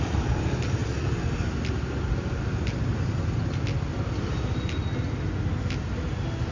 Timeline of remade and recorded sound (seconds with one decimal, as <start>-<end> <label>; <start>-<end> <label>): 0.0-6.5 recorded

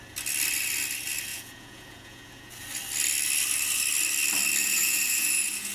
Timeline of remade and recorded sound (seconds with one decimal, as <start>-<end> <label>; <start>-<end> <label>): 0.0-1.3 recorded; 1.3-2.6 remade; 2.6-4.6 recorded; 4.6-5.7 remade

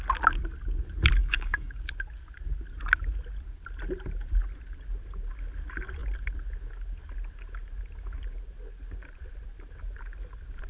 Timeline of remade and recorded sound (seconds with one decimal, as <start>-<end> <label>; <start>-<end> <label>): 0.0-1.2 recorded; 1.2-1.8 remade; 1.8-10.7 recorded

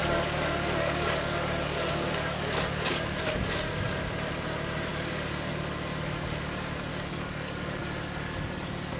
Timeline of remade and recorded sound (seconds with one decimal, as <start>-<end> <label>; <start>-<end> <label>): 0.0-3.4 remade; 3.4-4.9 recorded; 4.9-5.5 remade; 5.5-6.9 recorded; 6.9-7.8 remade; 7.8-9.0 recorded